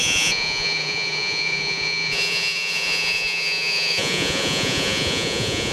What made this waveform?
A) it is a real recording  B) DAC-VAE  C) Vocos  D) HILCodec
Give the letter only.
C